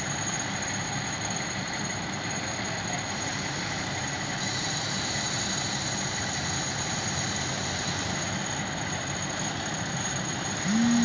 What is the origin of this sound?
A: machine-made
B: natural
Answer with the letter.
B